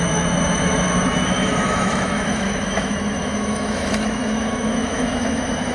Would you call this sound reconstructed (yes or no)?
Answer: yes